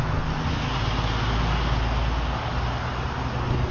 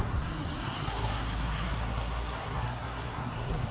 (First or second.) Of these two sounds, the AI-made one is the second